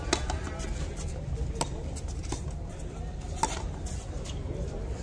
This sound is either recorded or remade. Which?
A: recorded